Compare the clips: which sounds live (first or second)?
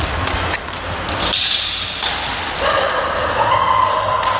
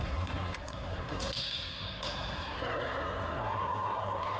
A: first